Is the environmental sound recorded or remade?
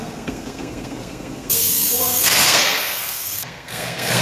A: remade